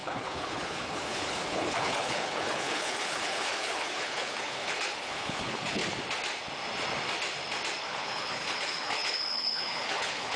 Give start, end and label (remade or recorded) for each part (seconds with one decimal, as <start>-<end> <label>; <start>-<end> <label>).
0.0-5.8 remade; 5.8-7.8 recorded; 7.8-10.4 remade